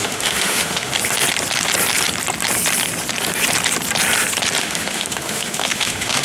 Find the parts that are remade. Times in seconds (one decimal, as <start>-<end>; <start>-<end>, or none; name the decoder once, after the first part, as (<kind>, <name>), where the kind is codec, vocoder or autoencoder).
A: 0.0-0.9 (autoencoder, DAC-VAE); 4.6-6.2